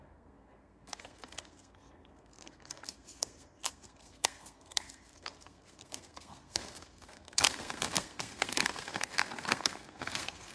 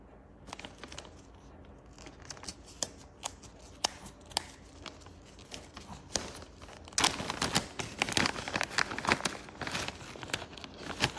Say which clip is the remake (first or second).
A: first